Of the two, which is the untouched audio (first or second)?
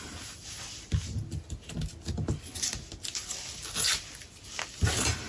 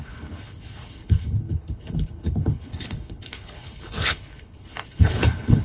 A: first